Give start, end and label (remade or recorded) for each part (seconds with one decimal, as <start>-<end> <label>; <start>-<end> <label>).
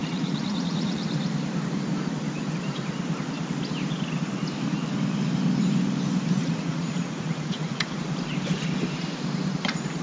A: 0.0-1.1 remade; 1.1-6.4 recorded; 6.4-8.0 remade; 8.0-10.0 recorded